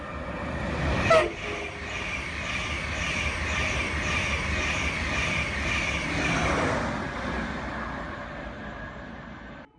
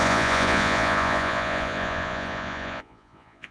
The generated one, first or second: second